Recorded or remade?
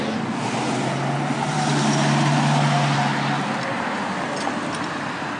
recorded